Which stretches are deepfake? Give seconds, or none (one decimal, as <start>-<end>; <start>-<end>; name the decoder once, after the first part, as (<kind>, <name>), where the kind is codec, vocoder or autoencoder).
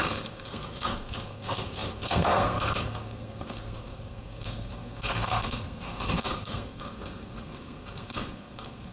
0.0-8.9 (codec, SNAC)